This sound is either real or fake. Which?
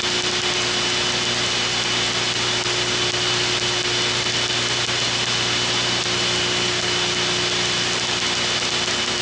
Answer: real